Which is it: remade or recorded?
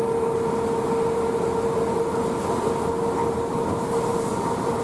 recorded